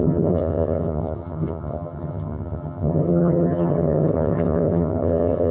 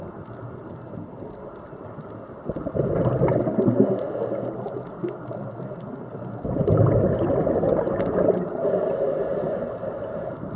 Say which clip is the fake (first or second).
first